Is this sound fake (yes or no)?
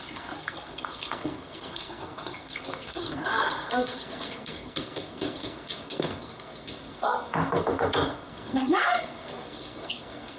yes